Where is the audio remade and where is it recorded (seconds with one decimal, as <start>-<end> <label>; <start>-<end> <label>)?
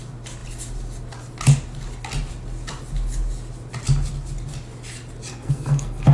0.0-5.3 recorded; 5.3-6.1 remade